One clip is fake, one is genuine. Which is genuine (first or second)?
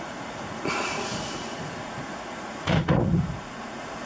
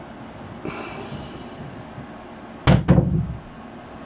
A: second